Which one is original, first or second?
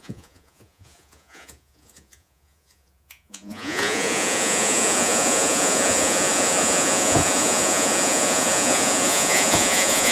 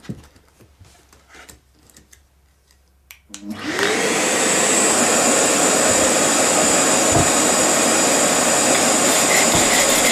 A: second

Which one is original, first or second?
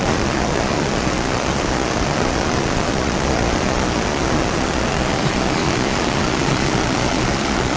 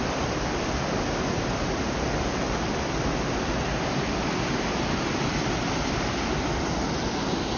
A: second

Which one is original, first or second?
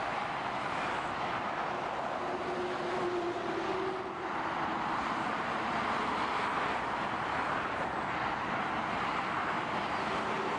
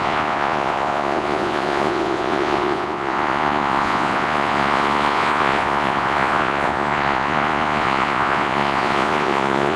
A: first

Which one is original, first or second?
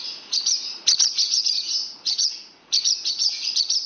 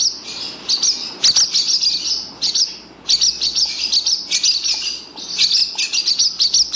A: second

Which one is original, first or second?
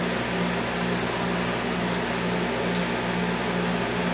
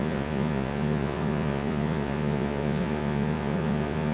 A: first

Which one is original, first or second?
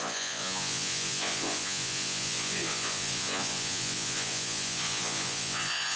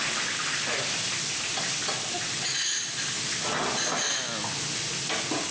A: second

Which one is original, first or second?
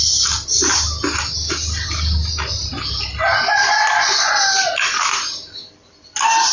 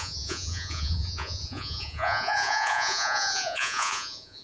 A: first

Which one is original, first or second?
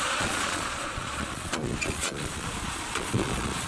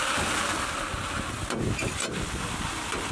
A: second